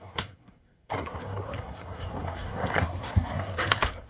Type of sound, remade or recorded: remade